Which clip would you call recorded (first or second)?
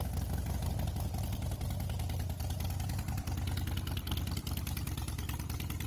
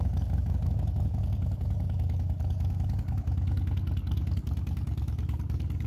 first